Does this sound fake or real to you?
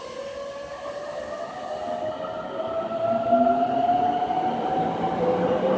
real